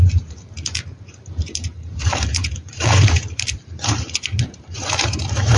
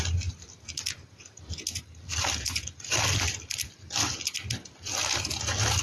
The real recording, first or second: second